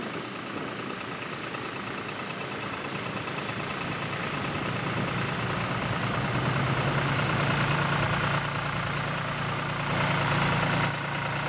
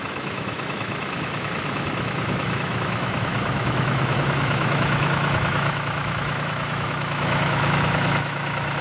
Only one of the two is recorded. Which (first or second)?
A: first